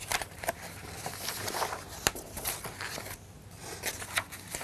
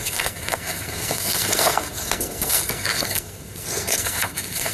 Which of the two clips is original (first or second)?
first